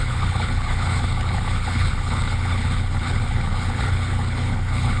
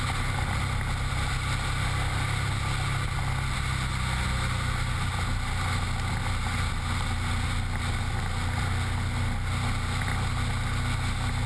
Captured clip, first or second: second